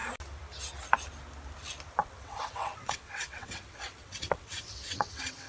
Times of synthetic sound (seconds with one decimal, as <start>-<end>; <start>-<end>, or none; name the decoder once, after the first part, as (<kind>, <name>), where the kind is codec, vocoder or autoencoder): 2.0-5.5 (vocoder, WaveNeXt)